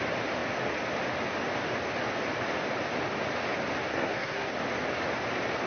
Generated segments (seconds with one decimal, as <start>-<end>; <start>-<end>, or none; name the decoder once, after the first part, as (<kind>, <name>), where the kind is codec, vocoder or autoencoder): 3.9-4.5 (codec, SNAC)